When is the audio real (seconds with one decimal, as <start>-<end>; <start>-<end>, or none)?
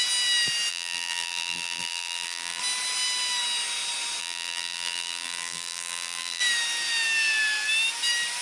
0.0-0.7; 2.6-4.2; 6.4-8.4